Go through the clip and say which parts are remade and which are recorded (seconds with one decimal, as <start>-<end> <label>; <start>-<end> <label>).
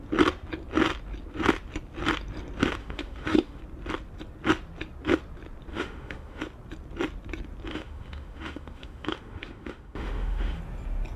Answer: 0.0-2.8 recorded; 2.8-3.6 remade; 3.6-5.7 recorded; 5.7-6.4 remade; 6.4-7.7 recorded; 7.7-10.6 remade; 10.6-11.2 recorded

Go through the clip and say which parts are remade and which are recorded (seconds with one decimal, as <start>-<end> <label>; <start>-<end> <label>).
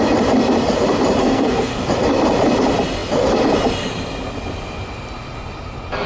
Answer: 0.0-1.2 recorded; 1.2-1.7 remade; 1.7-6.1 recorded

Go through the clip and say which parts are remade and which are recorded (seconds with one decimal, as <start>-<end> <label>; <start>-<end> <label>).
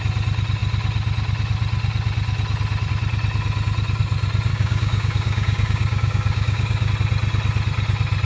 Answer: 0.0-4.5 recorded; 4.5-6.9 remade; 6.9-8.2 recorded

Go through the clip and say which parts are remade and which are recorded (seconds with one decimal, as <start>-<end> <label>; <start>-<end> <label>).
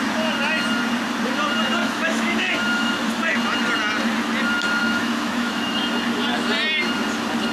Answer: 0.0-1.8 recorded; 1.8-2.9 remade; 2.9-4.8 recorded; 4.8-5.8 remade; 5.8-7.5 recorded